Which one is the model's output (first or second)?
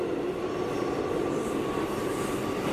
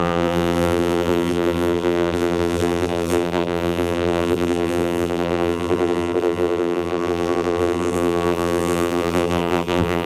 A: second